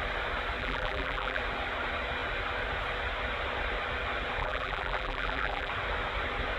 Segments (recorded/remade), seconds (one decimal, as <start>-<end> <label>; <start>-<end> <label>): 0.0-0.6 recorded; 0.6-1.4 remade; 1.4-4.4 recorded; 4.4-5.7 remade; 5.7-6.6 recorded